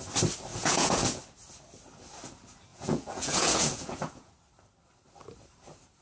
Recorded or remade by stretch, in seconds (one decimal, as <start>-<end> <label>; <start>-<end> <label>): 0.0-0.5 recorded; 0.5-1.2 remade; 1.2-2.7 recorded; 2.7-4.3 remade; 4.3-6.0 recorded